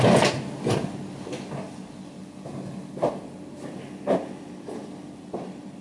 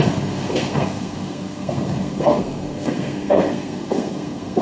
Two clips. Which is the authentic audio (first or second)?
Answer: first